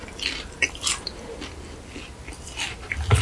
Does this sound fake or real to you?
real